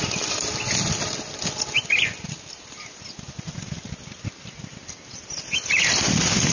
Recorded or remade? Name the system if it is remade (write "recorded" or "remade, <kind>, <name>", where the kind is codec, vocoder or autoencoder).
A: recorded